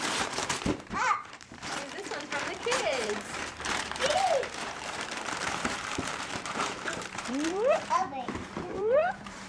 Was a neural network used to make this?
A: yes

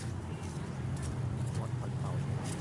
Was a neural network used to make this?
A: yes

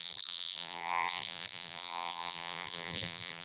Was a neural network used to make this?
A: yes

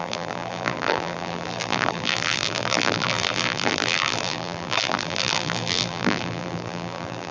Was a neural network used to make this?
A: yes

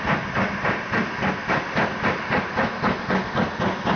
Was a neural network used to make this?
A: no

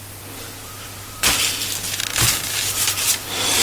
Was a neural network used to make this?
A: yes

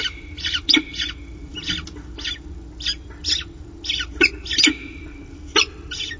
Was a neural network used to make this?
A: no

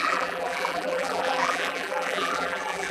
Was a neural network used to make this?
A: yes